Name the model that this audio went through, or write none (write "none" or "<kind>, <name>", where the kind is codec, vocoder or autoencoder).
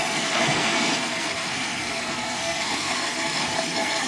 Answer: codec, SNAC